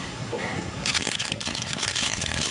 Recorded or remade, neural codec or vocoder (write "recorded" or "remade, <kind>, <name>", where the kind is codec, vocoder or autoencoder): remade, codec, SNAC